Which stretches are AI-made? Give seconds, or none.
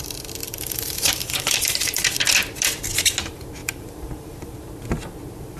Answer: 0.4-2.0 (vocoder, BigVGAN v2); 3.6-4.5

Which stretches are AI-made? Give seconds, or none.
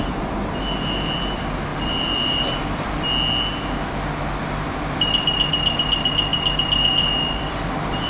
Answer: 1.7-3.1 (vocoder, BigVGAN v2); 6.3-8.1